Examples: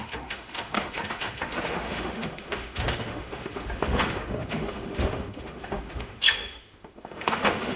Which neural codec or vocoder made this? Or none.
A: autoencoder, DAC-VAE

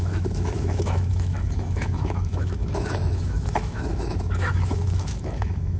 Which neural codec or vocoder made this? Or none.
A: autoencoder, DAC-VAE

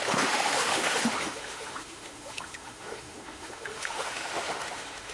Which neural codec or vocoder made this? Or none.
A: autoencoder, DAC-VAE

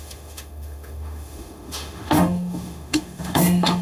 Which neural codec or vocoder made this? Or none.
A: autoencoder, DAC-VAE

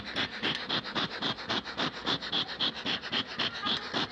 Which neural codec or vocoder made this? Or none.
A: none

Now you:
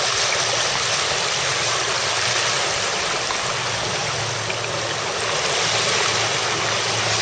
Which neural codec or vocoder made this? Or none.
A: none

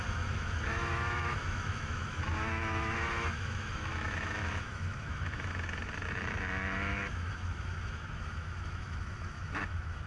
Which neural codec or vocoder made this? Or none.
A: autoencoder, DAC-VAE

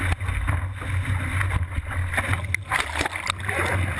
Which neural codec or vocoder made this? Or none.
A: none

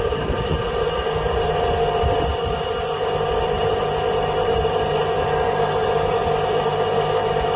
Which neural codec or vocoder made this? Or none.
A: none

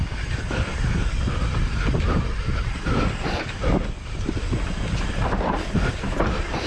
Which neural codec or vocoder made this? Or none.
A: none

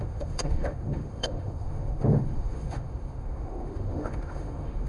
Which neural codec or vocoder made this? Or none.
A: autoencoder, DAC-VAE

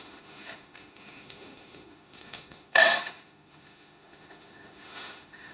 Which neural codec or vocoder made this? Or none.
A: autoencoder, DAC-VAE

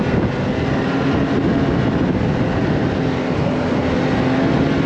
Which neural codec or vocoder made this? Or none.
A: none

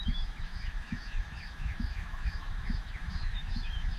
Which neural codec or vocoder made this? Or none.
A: autoencoder, DAC-VAE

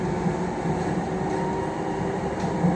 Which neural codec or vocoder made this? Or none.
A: none